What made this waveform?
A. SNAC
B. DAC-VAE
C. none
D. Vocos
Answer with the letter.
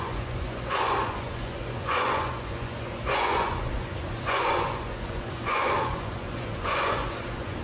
D